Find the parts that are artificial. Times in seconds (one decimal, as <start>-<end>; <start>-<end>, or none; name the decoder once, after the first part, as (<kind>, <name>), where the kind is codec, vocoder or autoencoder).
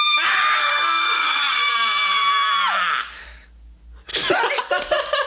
0.7-1.7 (codec, SNAC)